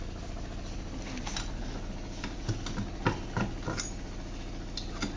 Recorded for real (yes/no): yes